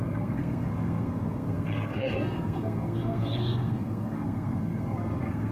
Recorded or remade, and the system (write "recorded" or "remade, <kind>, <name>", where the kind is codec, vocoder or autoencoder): remade, codec, SNAC